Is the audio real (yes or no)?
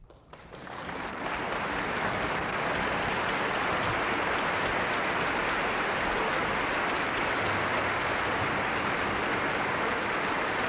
yes